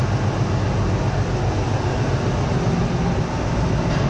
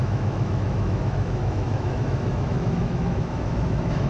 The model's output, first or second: second